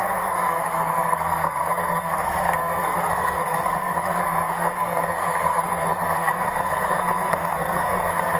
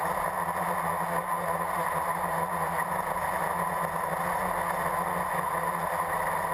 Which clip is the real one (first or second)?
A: second